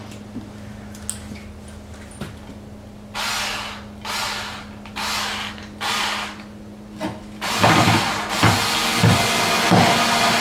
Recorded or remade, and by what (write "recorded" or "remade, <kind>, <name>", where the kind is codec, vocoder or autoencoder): recorded